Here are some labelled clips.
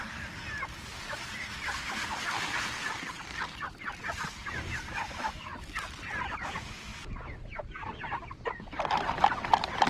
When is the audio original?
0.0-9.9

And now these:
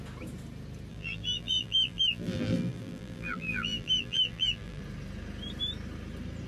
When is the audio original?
0.0-0.9; 4.8-6.5

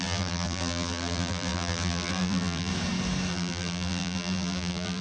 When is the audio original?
2.7-3.3

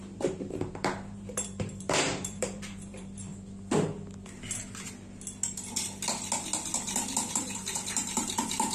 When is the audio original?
3.3-7.3

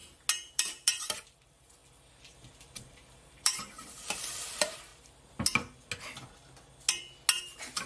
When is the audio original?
0.0-0.5; 1.8-2.7; 4.9-7.4

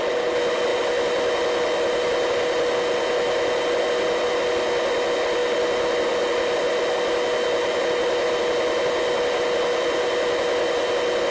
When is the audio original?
0.0-11.3

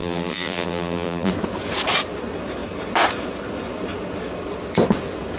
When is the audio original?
1.3-5.4